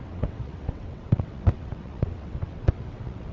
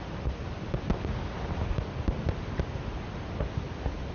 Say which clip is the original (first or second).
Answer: second